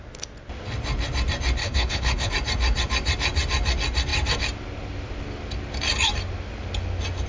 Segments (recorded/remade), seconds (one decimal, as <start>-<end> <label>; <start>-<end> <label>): 0.0-1.6 recorded; 1.6-2.3 remade; 2.3-7.3 recorded